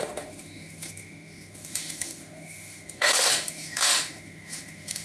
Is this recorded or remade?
remade